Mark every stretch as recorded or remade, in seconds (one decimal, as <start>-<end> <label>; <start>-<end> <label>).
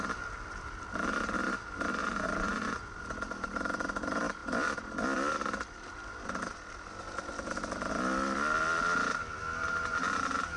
0.0-2.0 recorded; 2.0-3.0 remade; 3.0-10.6 recorded